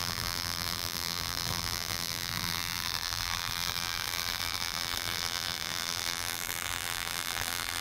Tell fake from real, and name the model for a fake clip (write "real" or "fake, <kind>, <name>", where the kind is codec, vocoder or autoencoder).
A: fake, vocoder, BigVGAN v2